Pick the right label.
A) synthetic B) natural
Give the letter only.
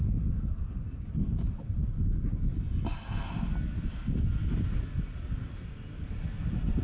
B